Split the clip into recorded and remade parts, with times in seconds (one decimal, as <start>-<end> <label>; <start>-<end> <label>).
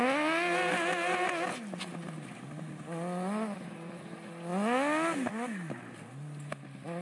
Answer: 0.0-7.0 recorded